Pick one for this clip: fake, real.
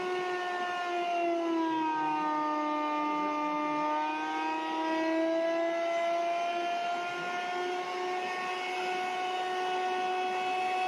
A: real